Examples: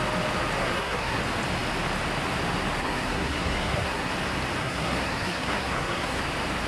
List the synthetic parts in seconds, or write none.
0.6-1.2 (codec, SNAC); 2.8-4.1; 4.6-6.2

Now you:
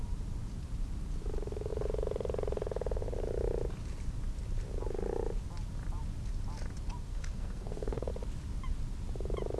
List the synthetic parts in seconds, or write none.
7.1-8.1 (codec, SNAC)

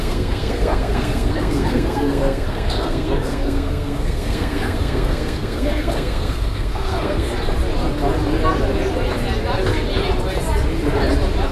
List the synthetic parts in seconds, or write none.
0.0-7.3 (codec, SNAC)

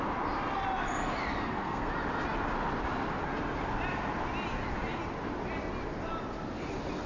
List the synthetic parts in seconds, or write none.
1.4-1.9 (codec, SNAC)